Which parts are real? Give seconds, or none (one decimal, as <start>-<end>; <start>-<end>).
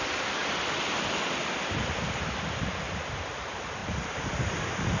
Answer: 0.0-5.0